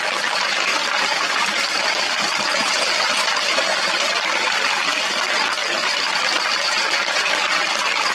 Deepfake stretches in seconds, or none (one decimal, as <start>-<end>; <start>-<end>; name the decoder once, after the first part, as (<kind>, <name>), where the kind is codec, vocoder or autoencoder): 0.7-1.8 (vocoder, BigVGAN v2)